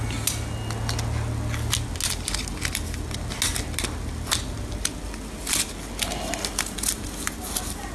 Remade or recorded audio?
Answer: recorded